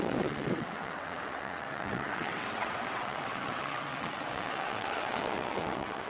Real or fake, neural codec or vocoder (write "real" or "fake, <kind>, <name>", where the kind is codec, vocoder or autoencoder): fake, vocoder, WaveNeXt